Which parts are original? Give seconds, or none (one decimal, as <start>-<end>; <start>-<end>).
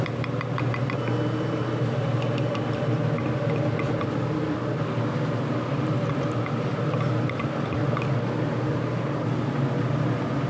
0.0-10.5